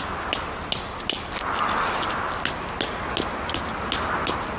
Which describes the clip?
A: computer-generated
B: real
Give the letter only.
B